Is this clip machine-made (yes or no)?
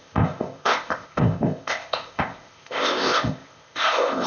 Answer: yes